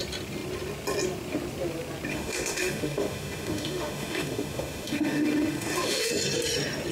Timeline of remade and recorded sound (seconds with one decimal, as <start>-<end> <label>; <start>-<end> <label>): 0.0-2.1 recorded; 2.1-6.1 remade; 6.1-6.9 recorded